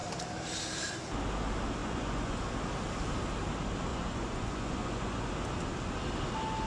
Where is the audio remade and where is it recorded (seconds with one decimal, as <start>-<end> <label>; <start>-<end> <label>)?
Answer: 0.0-1.8 recorded; 1.8-2.4 remade; 2.4-3.9 recorded; 3.9-5.3 remade; 5.3-6.7 recorded